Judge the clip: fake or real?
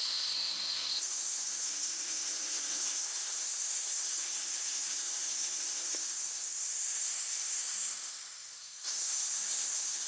fake